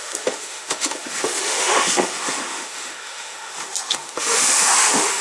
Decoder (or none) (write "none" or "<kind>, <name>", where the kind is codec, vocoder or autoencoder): autoencoder, DAC-VAE